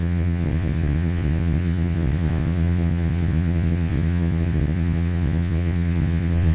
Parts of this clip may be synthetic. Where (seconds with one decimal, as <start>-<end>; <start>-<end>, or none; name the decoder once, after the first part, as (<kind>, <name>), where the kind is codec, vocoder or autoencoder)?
0.0-6.5 (vocoder, Vocos)